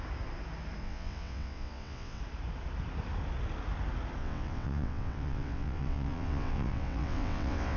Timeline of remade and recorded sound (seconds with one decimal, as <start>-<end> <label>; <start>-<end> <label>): 0.0-0.8 recorded; 0.8-2.2 remade; 2.2-4.2 recorded; 4.2-7.8 remade